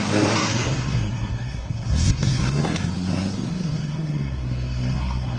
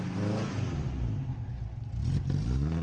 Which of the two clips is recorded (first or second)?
second